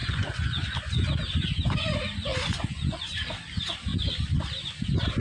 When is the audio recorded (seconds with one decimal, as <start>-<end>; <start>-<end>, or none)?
1.8-2.3; 3.0-5.2